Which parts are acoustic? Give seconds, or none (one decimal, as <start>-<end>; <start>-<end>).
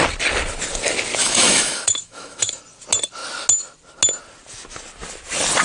0.0-1.2; 2.6-5.6